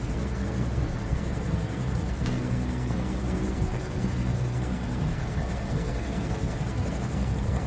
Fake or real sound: fake